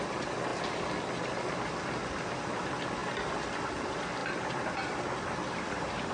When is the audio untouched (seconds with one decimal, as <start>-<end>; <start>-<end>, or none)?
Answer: 0.0-6.1